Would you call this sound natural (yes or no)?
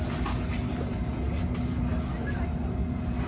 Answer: yes